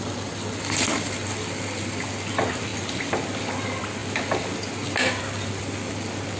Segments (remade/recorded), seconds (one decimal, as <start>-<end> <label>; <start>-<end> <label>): 0.0-6.4 recorded